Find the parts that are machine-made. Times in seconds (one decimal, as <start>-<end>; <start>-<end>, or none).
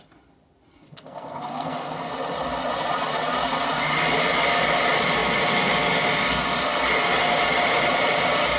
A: 0.7-2.1